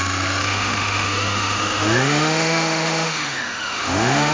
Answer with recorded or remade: remade